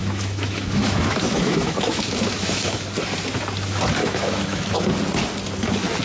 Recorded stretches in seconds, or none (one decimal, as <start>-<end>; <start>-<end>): 2.8-4.0; 4.9-6.0